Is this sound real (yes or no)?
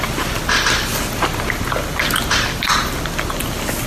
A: yes